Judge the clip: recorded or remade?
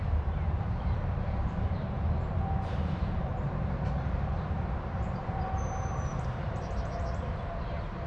remade